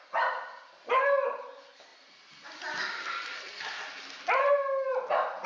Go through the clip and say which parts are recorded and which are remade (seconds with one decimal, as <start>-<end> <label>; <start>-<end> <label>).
0.0-5.5 recorded